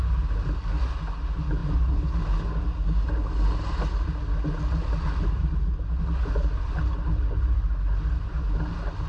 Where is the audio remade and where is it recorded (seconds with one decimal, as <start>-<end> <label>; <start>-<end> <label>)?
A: 0.0-9.1 recorded

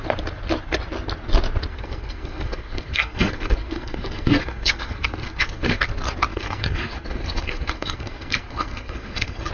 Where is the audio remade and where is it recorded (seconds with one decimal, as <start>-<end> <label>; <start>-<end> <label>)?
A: 0.0-1.7 recorded; 1.7-5.8 remade; 5.8-6.3 recorded; 6.3-9.5 remade

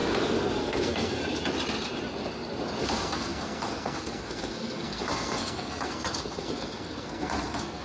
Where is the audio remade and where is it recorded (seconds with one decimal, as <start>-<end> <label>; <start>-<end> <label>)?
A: 0.0-0.6 recorded; 0.6-1.2 remade; 1.2-2.8 recorded; 2.8-7.8 remade

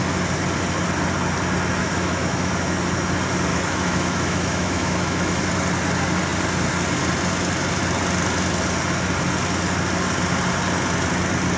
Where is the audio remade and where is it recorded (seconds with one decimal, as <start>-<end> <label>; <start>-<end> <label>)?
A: 0.0-1.8 recorded; 1.8-2.5 remade; 2.5-3.5 recorded; 3.5-5.4 remade; 5.4-11.6 recorded

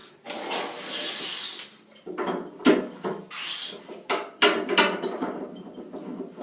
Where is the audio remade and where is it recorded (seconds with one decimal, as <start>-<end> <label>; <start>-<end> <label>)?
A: 0.0-3.8 recorded; 3.8-6.4 remade

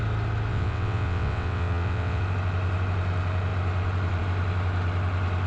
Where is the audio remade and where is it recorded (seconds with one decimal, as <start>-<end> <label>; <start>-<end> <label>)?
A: 0.0-0.5 recorded; 0.5-2.2 remade; 2.2-5.5 recorded